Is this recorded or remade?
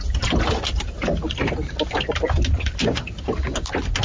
recorded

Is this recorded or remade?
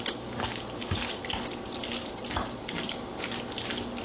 recorded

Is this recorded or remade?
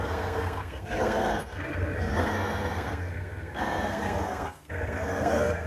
remade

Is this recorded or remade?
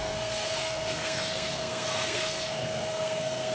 remade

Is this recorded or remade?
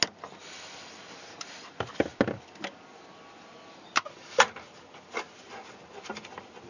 recorded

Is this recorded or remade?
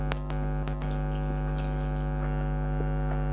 recorded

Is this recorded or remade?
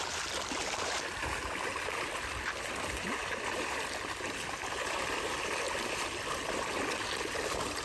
recorded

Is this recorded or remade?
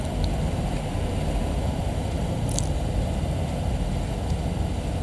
recorded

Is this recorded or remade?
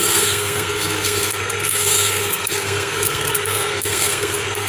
remade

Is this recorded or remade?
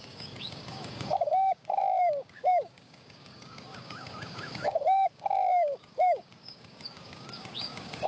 remade